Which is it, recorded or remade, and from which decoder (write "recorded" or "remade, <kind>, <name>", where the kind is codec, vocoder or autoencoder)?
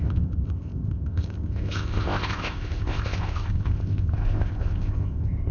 remade, codec, ZipCodec